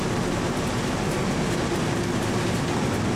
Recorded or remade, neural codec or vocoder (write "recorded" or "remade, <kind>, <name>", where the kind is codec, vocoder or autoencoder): recorded